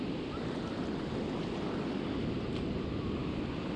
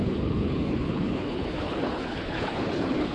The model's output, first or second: second